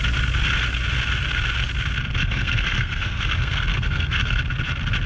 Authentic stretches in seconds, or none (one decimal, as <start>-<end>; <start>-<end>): 0.0-2.2; 4.4-5.1